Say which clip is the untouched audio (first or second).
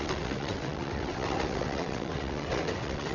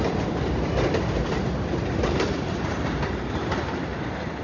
second